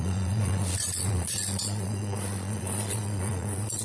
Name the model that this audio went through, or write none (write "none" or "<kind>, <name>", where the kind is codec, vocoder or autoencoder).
vocoder, Vocos